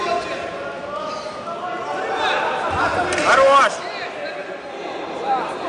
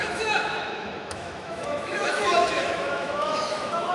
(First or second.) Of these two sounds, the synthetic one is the second